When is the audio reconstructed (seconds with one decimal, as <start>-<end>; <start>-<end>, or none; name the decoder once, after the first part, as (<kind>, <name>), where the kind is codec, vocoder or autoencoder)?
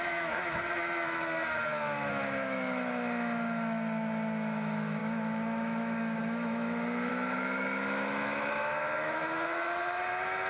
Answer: 0.0-10.5 (autoencoder, DAC-VAE)